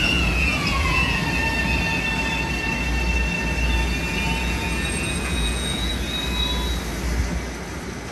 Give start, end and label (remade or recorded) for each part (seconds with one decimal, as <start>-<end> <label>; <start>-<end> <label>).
0.0-1.2 remade; 1.2-4.4 recorded; 4.4-5.9 remade; 5.9-8.1 recorded